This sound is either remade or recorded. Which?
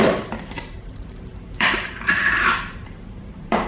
remade